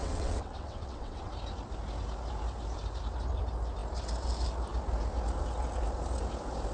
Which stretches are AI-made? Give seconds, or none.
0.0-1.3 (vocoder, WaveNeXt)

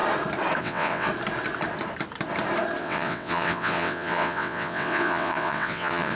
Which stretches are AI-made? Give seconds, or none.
0.6-1.1 (vocoder, WaveNeXt); 2.8-6.2

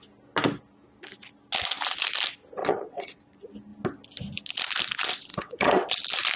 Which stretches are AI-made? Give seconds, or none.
2.6-3.2 (vocoder, WaveNeXt); 5.3-5.9

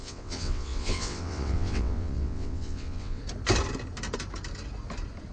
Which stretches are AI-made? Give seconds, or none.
0.0-3.2 (vocoder, WaveNeXt)

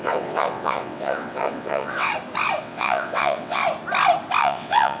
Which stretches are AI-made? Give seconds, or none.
0.0-2.1 (vocoder, WaveNeXt); 2.6-3.6; 4.4-5.0